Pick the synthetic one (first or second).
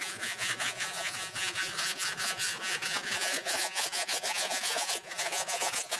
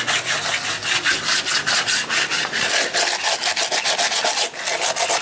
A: first